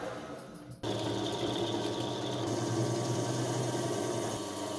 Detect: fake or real real